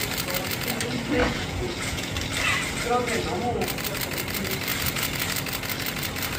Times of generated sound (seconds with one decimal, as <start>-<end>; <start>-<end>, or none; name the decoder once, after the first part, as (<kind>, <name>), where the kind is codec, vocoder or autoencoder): 1.2-2.1 (vocoder, Vocos)